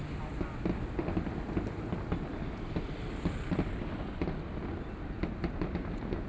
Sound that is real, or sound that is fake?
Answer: real